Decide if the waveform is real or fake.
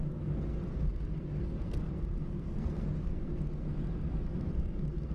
fake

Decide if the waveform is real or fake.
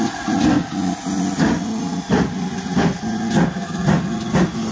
real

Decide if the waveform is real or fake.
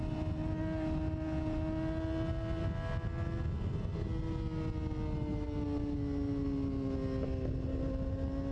real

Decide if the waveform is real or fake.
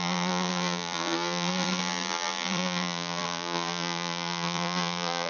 fake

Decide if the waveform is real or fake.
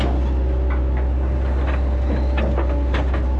real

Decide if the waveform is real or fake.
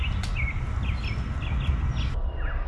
real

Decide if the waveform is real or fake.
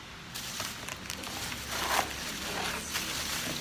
real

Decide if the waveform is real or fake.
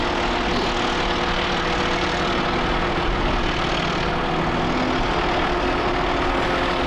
real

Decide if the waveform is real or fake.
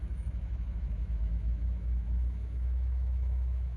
fake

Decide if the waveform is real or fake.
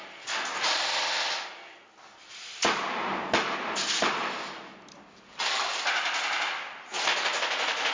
real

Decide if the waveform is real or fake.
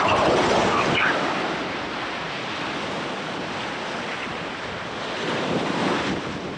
real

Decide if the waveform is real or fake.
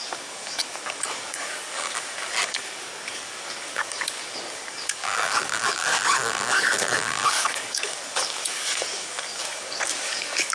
fake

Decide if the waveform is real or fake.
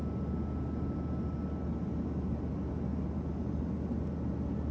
real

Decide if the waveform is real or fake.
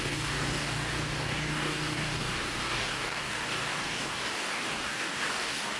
fake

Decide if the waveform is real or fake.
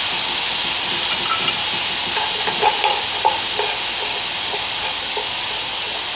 real